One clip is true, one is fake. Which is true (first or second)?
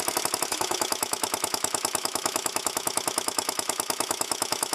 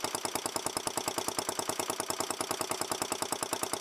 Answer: second